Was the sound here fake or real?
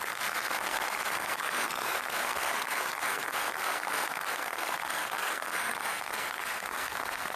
fake